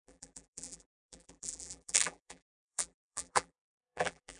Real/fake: fake